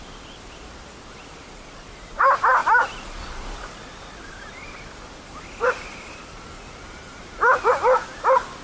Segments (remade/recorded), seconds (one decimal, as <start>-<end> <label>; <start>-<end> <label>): 0.0-8.6 recorded

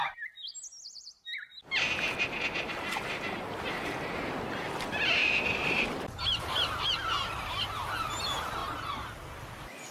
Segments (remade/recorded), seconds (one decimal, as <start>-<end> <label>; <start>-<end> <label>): 0.0-5.2 recorded; 5.2-7.1 remade; 7.1-9.9 recorded